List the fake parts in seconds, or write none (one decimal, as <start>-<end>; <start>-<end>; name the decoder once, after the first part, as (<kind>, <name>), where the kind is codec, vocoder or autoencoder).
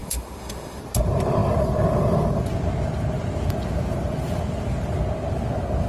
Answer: 0.0-0.8 (autoencoder, DAC-VAE)